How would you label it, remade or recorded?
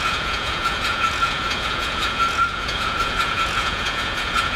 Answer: remade